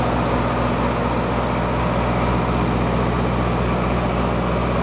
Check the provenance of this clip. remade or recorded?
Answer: recorded